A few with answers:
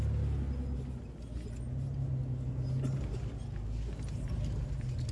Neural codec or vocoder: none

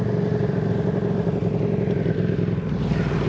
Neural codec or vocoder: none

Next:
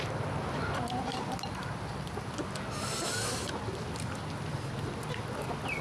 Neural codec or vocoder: none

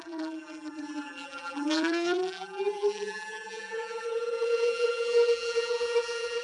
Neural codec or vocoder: vocoder, BigVGAN v2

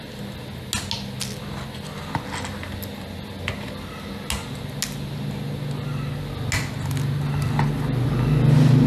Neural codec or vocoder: none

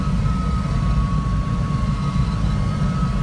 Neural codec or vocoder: none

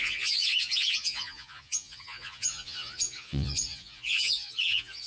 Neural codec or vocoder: vocoder, Vocos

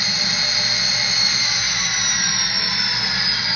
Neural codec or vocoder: none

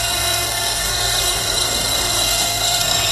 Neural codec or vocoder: codec, SNAC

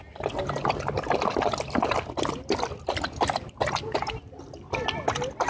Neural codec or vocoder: none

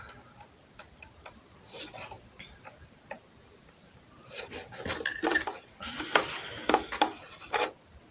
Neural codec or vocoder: none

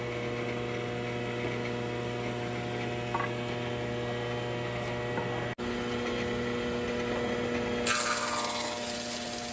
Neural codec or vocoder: none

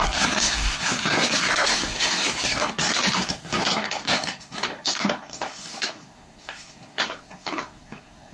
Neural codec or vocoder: codec, SNAC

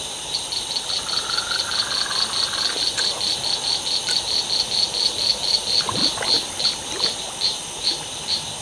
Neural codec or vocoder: none